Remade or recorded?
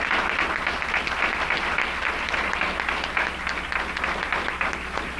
recorded